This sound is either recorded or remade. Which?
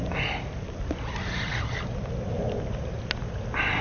recorded